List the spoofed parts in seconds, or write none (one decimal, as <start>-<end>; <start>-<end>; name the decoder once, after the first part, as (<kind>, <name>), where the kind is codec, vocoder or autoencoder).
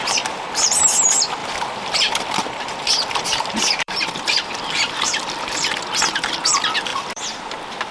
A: 1.4-5.8 (vocoder, BigVGAN v2); 6.9-7.4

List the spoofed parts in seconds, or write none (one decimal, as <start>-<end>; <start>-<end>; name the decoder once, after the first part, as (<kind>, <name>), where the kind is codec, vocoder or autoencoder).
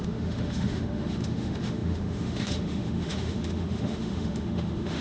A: 0.0-5.0 (autoencoder, DAC-VAE)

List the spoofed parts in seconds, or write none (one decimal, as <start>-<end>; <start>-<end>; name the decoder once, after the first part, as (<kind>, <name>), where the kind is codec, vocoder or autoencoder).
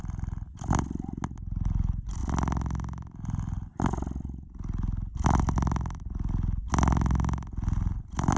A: none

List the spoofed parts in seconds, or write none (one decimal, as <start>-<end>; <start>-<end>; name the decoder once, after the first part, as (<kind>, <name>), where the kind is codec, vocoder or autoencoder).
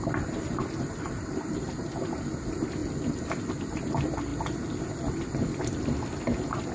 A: 0.0-4.3 (vocoder, BigVGAN v2); 5.2-6.7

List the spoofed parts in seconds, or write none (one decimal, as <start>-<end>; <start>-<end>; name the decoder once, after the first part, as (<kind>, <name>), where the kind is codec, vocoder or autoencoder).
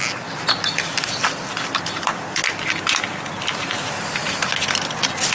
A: none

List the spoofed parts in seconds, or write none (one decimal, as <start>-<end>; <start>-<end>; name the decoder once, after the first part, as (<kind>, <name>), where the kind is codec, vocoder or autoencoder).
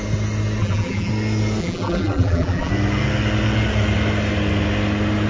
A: 0.6-1.1 (vocoder, BigVGAN v2); 1.6-2.7